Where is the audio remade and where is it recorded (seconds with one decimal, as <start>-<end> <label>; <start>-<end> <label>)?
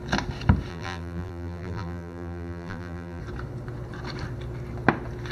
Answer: 0.0-0.7 recorded; 0.7-3.2 remade; 3.2-5.3 recorded